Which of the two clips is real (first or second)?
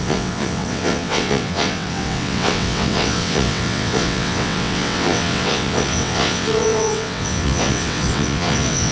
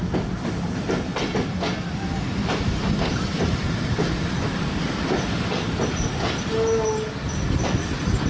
second